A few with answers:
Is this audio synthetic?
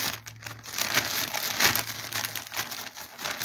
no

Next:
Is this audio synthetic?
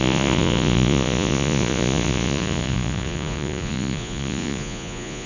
yes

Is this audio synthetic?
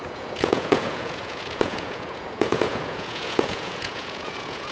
yes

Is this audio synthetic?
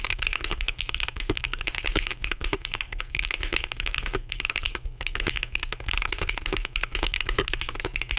yes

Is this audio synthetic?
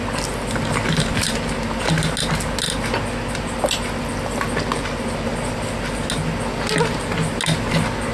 no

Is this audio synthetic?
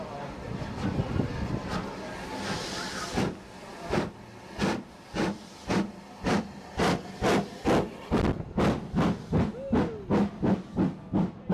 no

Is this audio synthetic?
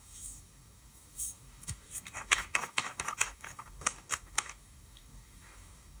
yes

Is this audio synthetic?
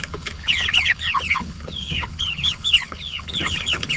yes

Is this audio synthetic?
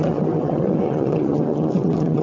yes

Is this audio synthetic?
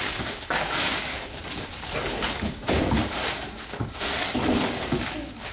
yes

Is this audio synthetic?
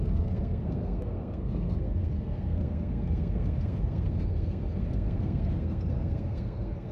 yes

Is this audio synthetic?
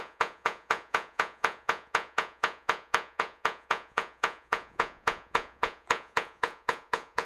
yes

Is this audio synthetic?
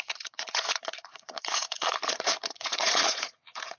yes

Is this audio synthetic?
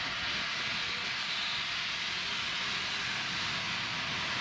no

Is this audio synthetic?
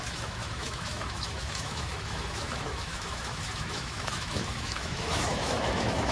yes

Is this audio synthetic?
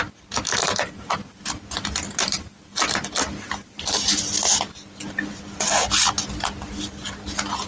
no